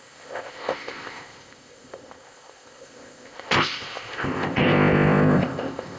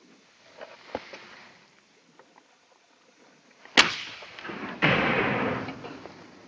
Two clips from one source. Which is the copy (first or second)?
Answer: first